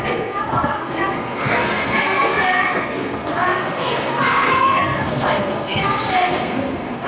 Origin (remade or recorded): remade